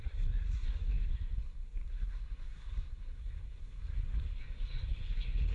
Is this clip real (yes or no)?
no